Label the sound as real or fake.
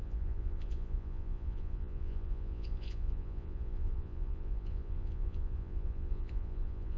fake